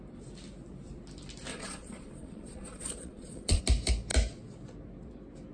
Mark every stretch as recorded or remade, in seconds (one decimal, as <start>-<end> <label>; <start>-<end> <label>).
0.0-1.5 recorded; 1.5-3.6 remade; 3.6-5.5 recorded